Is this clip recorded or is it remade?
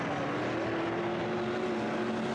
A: recorded